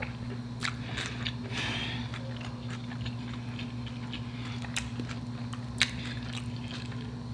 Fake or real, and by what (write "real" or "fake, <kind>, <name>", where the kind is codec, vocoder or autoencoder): real